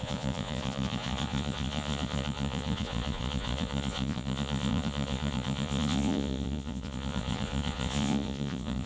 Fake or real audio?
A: fake